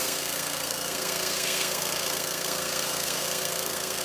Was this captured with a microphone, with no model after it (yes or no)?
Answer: no